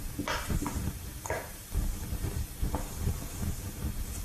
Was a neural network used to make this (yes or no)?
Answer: no